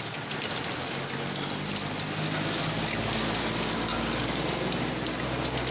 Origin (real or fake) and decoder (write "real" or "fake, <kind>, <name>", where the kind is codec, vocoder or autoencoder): real